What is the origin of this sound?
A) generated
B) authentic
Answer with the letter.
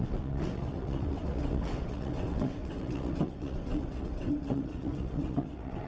A